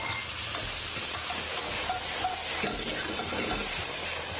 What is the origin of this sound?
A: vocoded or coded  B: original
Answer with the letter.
B